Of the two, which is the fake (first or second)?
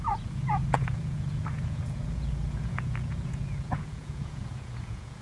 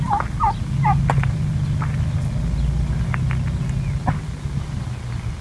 first